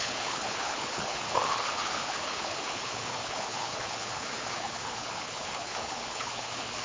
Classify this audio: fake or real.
fake